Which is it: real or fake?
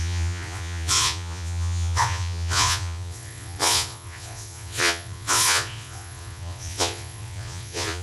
fake